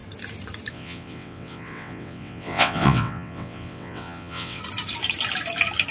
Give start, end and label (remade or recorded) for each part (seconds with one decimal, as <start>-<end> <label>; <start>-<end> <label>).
0.0-0.7 recorded; 0.7-4.6 remade; 4.6-5.9 recorded